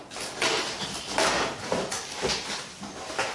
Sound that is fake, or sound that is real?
real